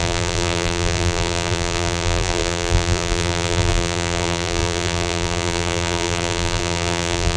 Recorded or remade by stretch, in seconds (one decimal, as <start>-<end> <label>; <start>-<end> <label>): 0.0-7.4 remade